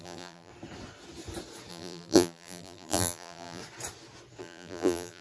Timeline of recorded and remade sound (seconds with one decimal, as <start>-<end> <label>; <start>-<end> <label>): 0.0-0.5 remade; 0.5-1.7 recorded; 1.7-3.6 remade; 3.6-4.4 recorded; 4.4-5.2 remade